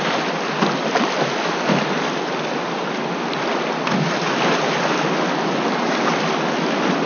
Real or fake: real